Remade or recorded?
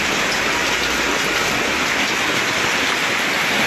recorded